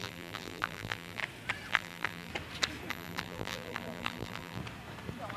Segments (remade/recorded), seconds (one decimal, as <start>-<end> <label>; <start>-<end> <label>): 0.0-1.2 remade; 1.2-1.7 recorded; 1.7-2.3 remade; 2.3-2.9 recorded; 2.9-4.6 remade; 4.6-5.4 recorded

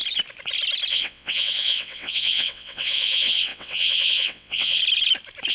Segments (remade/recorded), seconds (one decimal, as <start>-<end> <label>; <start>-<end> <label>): 0.0-0.9 recorded; 0.9-4.8 remade; 4.8-5.5 recorded

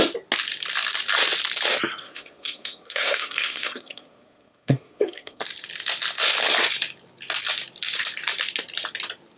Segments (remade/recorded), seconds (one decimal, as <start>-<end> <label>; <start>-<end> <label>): 0.0-2.0 recorded; 2.0-5.4 remade; 5.4-9.4 recorded

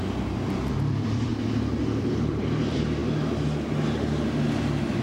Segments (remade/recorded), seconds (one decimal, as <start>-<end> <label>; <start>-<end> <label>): 0.0-1.3 remade; 1.3-1.8 recorded; 1.8-3.0 remade; 3.0-5.0 recorded